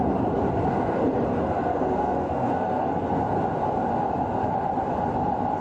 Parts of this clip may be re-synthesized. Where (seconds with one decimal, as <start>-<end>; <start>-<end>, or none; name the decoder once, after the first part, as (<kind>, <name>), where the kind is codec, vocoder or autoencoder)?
1.3-3.2 (codec, SNAC)